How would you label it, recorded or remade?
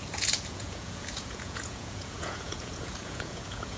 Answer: remade